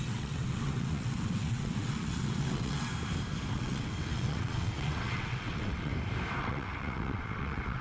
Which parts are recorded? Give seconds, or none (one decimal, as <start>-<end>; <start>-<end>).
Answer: 2.9-3.5; 5.9-6.4